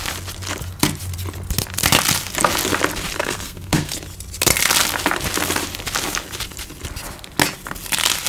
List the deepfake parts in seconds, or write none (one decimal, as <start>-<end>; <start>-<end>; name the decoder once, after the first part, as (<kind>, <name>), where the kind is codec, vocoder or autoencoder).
3.2-3.9 (codec, SNAC)